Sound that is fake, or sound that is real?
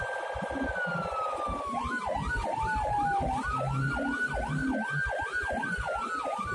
real